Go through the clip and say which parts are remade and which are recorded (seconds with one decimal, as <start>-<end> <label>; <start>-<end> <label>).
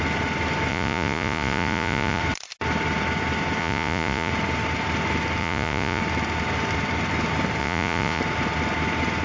0.0-0.7 recorded; 0.7-2.2 remade; 2.2-3.6 recorded; 3.6-4.3 remade; 4.3-5.4 recorded; 5.4-6.0 remade; 6.0-7.6 recorded; 7.6-8.2 remade; 8.2-9.2 recorded